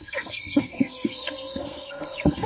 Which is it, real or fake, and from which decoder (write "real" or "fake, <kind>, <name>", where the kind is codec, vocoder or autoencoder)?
fake, codec, SNAC